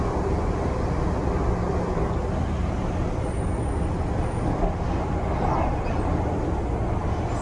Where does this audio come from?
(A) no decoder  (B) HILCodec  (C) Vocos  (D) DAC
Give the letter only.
A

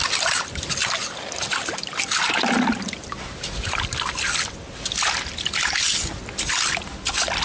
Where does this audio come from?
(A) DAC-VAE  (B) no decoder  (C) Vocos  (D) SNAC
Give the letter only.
B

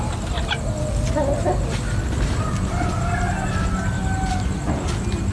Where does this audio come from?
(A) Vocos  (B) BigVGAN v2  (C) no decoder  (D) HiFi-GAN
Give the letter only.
C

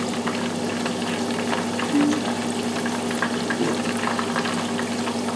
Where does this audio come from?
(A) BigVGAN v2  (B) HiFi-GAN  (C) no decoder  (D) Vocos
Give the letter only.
C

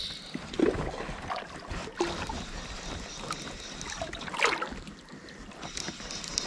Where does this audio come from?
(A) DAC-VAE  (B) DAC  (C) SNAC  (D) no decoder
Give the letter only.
D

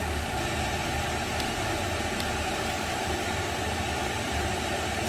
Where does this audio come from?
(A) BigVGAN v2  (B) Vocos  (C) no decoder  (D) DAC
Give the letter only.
A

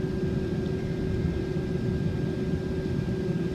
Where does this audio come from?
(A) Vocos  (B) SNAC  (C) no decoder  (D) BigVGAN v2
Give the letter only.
C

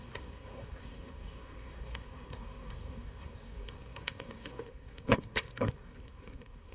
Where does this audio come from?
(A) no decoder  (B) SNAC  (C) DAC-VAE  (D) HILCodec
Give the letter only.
B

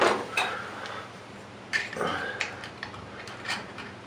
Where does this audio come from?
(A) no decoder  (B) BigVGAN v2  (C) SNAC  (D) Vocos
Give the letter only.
B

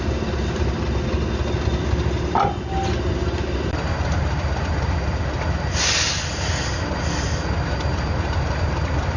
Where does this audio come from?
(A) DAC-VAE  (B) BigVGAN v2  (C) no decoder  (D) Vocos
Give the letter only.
C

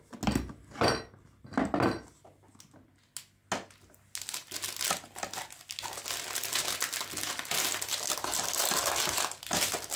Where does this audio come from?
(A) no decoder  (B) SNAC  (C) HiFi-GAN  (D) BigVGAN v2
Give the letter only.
A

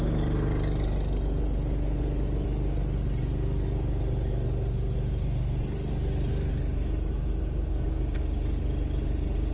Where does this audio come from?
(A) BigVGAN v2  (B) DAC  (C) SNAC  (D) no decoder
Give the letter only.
D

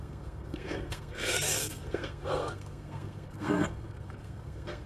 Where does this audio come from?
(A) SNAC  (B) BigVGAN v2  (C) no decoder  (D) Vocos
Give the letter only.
A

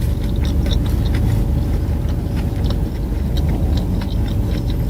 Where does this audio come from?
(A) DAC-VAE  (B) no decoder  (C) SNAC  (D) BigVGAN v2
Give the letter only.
B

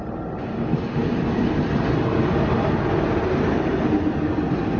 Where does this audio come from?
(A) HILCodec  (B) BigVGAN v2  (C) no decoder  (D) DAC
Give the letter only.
C